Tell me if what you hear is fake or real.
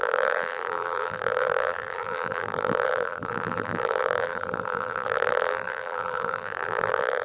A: fake